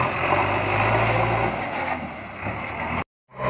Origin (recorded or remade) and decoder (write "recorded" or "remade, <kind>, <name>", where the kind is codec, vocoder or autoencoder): recorded